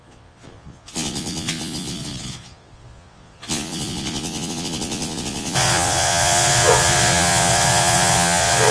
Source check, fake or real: fake